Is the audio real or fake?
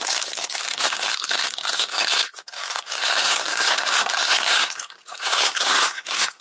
fake